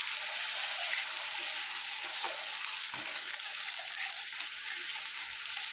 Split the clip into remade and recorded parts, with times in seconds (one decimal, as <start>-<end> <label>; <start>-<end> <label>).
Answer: 0.0-2.1 recorded; 2.1-3.6 remade; 3.6-5.7 recorded